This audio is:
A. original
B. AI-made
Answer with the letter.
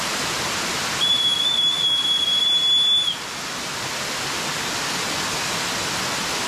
A